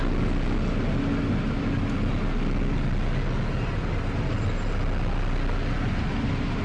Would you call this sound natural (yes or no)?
yes